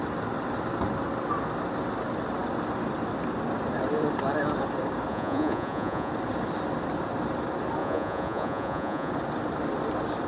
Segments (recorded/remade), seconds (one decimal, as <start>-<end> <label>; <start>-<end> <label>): 0.0-5.1 recorded; 5.1-6.1 remade; 6.1-7.8 recorded; 7.8-9.1 remade; 9.1-10.3 recorded